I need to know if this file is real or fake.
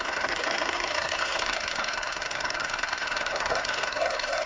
fake